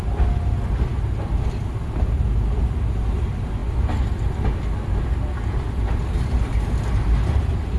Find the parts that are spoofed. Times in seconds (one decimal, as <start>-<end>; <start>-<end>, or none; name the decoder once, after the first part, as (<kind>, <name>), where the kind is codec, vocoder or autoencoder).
none